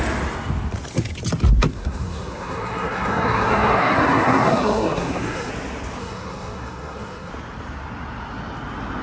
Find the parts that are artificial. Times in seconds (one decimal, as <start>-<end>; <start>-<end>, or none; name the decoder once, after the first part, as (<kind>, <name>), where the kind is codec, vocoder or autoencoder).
1.7-5.5 (codec, SNAC); 6.0-7.3